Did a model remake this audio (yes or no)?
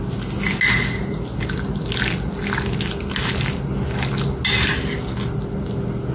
no